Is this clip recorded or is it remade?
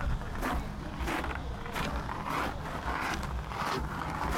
recorded